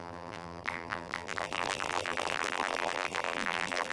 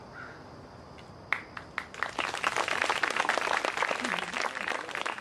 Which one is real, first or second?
second